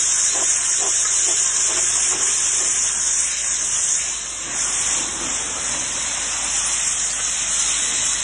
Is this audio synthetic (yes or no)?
no